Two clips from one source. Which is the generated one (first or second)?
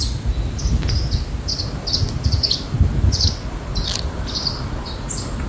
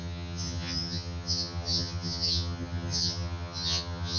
second